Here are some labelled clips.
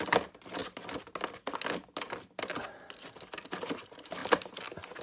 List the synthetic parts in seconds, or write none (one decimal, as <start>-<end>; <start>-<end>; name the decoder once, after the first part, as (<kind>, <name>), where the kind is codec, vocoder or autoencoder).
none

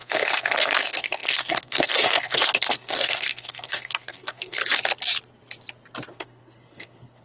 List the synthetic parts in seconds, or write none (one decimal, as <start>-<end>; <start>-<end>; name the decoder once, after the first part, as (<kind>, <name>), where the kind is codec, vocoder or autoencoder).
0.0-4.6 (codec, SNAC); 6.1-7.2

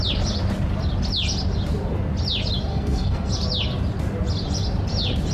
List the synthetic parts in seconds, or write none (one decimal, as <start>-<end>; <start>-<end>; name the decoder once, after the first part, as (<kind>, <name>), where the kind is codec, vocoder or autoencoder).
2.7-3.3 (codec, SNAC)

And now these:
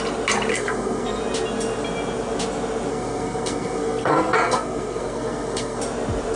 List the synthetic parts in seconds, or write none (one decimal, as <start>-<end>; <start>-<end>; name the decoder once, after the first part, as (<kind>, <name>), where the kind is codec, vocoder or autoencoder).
0.5-1.2 (codec, SNAC); 2.9-5.8

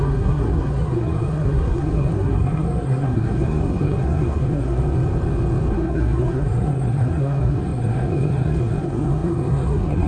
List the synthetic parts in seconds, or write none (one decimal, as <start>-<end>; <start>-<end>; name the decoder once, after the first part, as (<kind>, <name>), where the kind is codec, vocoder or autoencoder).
0.0-4.8 (codec, SNAC); 5.7-10.1

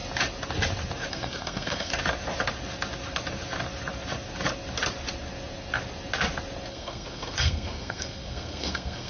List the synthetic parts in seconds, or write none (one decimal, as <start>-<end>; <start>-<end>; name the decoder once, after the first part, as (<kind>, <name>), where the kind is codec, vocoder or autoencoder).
1.1-1.9 (codec, SNAC); 6.7-9.1

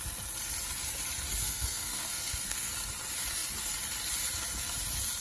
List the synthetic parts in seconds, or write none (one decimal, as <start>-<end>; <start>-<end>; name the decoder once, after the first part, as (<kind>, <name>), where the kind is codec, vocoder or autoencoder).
1.4-2.7 (codec, SNAC)

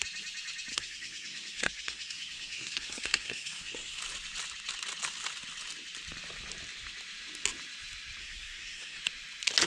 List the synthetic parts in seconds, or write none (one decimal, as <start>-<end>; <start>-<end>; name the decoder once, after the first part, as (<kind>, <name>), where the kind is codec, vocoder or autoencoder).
0.7-4.0 (codec, SNAC); 8.2-9.0